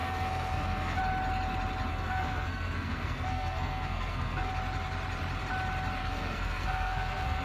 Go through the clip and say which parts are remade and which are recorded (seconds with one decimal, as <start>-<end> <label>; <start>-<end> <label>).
0.0-1.0 remade; 1.0-1.9 recorded; 1.9-4.5 remade; 4.5-6.0 recorded; 6.0-7.4 remade